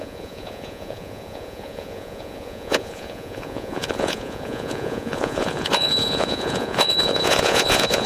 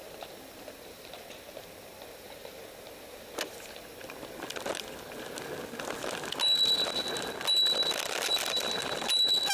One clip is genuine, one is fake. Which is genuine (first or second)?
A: second